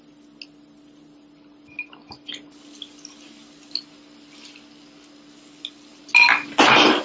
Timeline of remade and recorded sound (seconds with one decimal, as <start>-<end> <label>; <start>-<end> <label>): 0.0-7.0 recorded